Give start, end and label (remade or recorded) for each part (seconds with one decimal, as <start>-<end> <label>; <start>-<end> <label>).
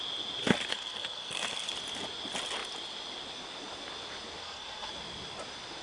0.0-0.7 recorded; 0.7-1.7 remade; 1.7-4.4 recorded; 4.4-4.9 remade; 4.9-5.8 recorded